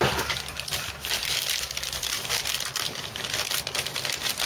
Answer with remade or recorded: remade